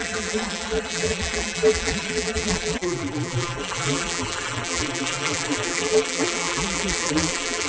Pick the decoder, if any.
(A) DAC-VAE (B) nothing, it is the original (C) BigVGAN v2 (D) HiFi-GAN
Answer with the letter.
C